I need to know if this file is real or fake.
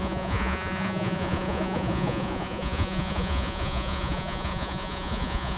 fake